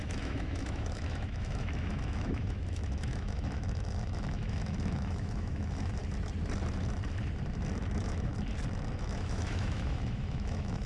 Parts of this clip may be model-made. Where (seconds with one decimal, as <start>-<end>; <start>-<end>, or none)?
0.0-6.0; 7.8-8.3; 9.0-10.9